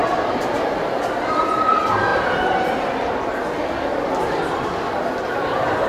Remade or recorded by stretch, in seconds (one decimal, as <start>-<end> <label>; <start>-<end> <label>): 0.0-5.9 recorded